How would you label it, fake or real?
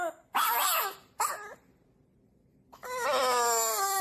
real